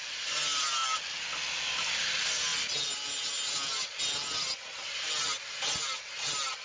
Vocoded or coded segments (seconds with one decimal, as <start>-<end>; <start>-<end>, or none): none